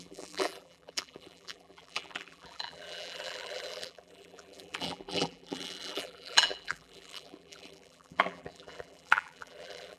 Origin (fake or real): fake